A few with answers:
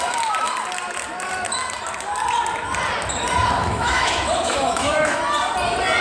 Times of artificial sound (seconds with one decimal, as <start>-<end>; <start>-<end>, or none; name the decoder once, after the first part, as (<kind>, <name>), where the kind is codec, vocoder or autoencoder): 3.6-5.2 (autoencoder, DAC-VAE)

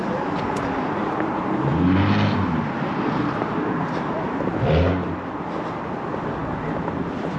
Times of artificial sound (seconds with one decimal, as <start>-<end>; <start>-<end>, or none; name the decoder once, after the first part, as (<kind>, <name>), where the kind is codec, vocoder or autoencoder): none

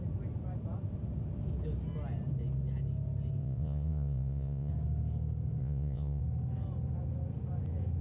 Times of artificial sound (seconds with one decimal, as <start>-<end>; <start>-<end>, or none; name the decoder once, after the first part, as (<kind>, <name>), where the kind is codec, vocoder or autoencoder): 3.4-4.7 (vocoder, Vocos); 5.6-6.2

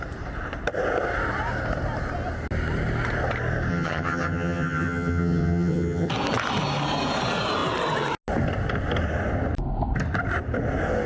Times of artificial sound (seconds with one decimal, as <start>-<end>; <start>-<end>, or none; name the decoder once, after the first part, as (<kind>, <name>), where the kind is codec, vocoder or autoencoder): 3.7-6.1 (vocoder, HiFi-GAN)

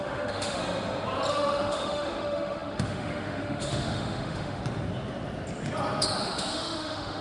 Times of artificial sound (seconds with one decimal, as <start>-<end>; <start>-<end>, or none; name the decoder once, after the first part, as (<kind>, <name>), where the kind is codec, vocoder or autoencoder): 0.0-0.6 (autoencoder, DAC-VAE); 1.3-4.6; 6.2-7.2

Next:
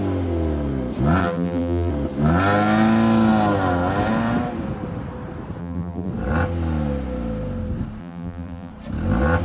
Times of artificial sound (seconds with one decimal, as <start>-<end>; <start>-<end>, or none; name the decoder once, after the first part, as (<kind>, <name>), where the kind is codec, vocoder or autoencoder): 1.2-1.9 (vocoder, BigVGAN v2); 5.6-6.1; 8.0-8.7

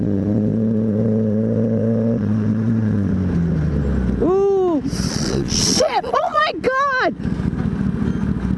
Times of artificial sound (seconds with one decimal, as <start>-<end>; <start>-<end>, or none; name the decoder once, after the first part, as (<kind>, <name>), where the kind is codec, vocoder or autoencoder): 0.0-3.1 (vocoder, Vocos); 5.1-6.4

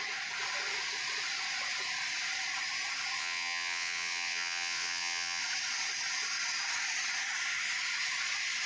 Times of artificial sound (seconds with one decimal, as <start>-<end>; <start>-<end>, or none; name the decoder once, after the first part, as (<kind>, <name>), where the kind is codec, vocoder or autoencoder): 3.2-5.4 (vocoder, WaveNeXt)